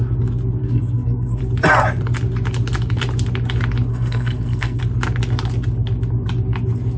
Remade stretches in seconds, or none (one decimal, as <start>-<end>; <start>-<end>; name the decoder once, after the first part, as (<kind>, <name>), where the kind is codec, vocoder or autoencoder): 0.6-1.4 (codec, SNAC); 3.9-4.8